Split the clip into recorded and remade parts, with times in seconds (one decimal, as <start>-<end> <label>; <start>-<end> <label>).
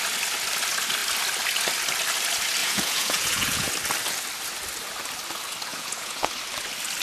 0.0-2.6 recorded; 2.6-3.7 remade; 3.7-5.7 recorded; 5.7-6.3 remade; 6.3-7.0 recorded